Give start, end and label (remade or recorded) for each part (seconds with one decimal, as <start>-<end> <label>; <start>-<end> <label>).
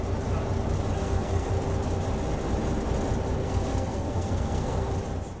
0.0-1.0 recorded; 1.0-1.5 remade; 1.5-3.4 recorded; 3.4-4.9 remade; 4.9-5.4 recorded